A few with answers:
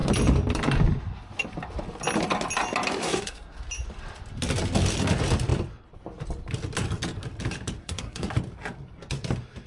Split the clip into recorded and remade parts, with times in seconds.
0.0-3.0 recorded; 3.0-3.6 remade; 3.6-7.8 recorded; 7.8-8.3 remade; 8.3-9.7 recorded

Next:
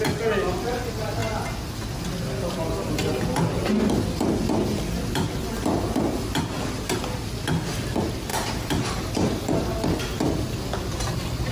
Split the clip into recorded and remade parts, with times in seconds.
0.0-8.3 recorded; 8.3-9.1 remade; 9.1-11.5 recorded

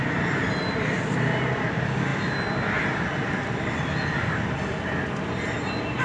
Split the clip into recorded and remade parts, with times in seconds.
0.0-6.0 recorded

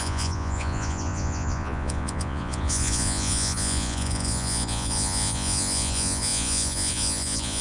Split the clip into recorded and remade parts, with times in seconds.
0.0-7.6 remade

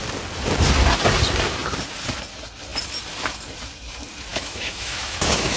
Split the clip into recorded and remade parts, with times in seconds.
0.0-4.3 recorded; 4.3-5.6 remade

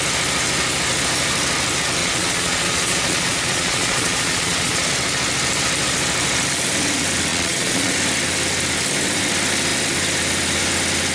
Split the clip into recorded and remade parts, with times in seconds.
0.0-2.0 recorded; 2.0-4.9 remade; 4.9-7.3 recorded; 7.3-7.9 remade; 7.9-11.1 recorded

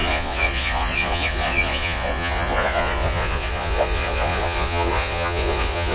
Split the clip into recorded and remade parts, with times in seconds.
0.0-5.9 remade